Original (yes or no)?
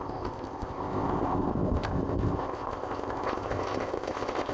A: no